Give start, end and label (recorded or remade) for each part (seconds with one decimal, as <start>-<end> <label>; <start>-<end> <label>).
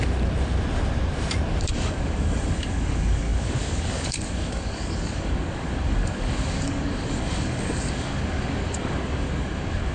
0.0-1.6 recorded; 1.6-9.9 remade